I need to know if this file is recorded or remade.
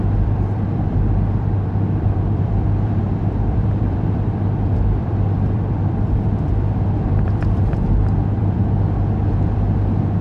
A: remade